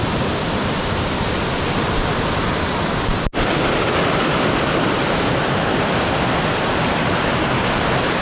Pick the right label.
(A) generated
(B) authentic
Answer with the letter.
B